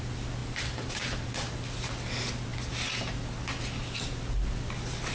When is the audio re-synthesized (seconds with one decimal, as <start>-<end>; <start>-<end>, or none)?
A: none